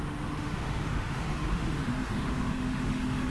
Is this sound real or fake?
fake